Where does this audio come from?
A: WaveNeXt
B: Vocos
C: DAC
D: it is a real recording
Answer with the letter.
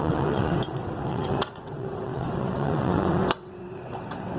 A